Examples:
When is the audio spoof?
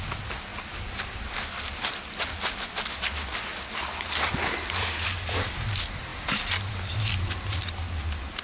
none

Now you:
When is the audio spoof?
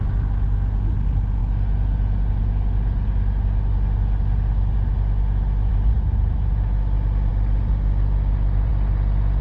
none